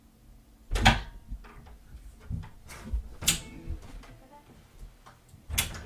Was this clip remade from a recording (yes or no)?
no